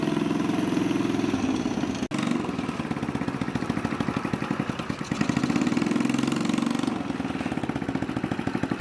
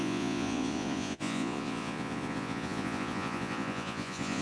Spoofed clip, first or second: second